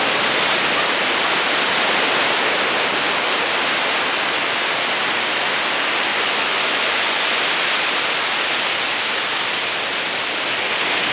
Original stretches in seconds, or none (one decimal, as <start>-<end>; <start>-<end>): 0.0-6.1; 7.4-11.1